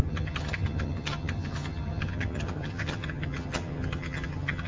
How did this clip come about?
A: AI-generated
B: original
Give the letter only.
A